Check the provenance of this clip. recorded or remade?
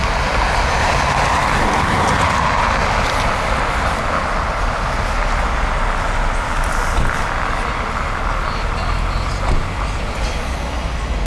recorded